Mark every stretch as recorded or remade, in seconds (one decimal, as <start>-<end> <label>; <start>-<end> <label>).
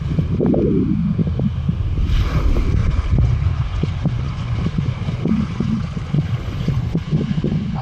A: 0.0-2.8 recorded; 2.8-7.8 remade